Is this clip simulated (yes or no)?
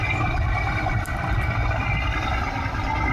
no